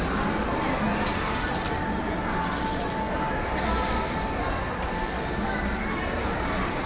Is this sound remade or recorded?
recorded